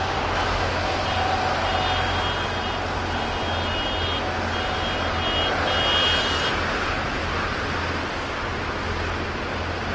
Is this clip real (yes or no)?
yes